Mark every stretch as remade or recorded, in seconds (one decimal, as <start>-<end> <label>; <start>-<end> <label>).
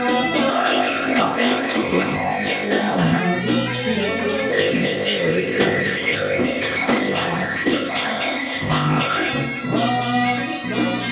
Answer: 0.0-0.5 recorded; 0.5-3.2 remade; 3.2-4.5 recorded; 4.5-9.3 remade; 9.3-11.1 recorded